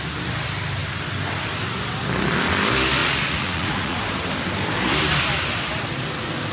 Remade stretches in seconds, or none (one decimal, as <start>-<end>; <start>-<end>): 3.0-4.0